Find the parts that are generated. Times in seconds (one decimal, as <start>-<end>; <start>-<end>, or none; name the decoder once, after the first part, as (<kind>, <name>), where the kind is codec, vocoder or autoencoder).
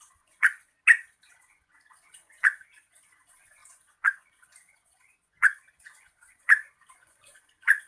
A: 0.0-0.8 (vocoder, Vocos); 1.3-7.9